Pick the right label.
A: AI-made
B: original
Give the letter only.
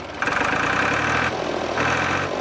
B